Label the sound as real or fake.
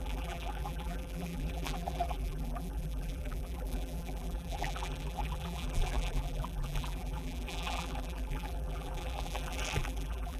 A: fake